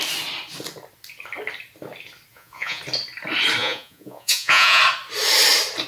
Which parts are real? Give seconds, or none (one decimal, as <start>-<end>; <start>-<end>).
0.0-2.3; 2.8-3.6; 4.8-5.9